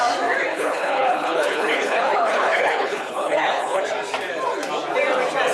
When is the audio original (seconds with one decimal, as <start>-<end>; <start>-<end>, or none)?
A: 0.0-0.5; 3.8-5.5